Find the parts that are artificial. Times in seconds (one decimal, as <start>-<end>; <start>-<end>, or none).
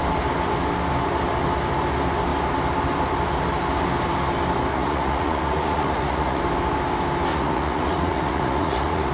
4.7-6.4; 7.3-9.1